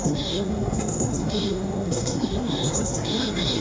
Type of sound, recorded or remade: remade